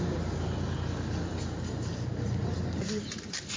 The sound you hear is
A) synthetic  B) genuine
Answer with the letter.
B